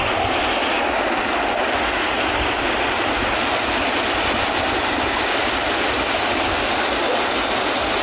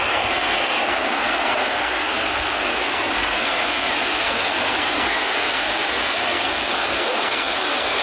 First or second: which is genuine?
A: first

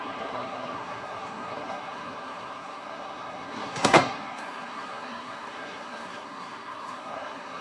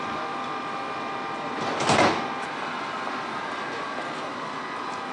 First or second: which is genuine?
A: second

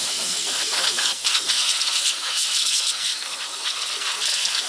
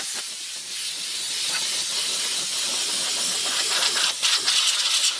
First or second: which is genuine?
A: second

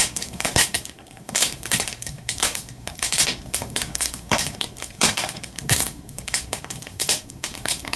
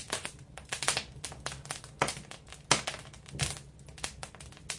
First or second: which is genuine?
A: second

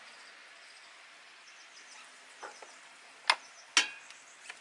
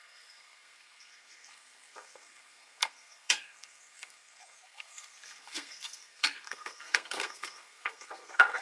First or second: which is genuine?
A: first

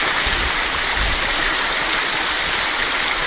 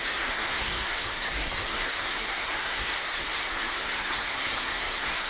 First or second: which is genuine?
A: first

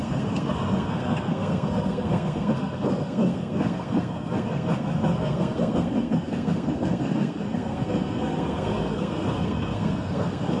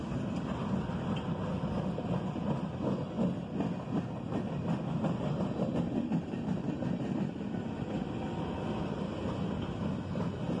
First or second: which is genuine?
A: second